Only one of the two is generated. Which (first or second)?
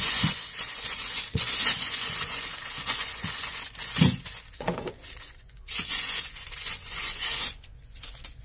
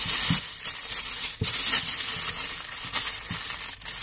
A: first